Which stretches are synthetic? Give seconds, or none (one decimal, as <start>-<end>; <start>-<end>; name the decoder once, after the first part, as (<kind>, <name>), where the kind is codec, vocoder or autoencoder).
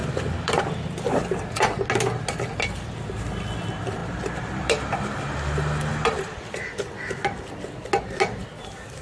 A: 0.0-0.6 (vocoder, BigVGAN v2); 4.0-5.3; 5.9-6.6